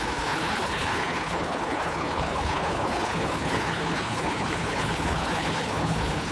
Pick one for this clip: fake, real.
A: fake